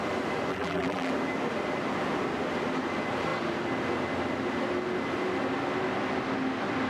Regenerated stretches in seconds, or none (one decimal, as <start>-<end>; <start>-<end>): 0.5-1.1